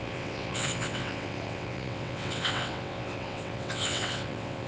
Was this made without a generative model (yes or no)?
no